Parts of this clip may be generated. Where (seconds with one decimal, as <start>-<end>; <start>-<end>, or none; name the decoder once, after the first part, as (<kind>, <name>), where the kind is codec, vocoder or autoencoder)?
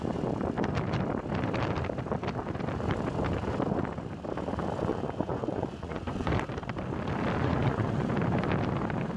4.9-6.3 (vocoder, Vocos); 7.4-8.1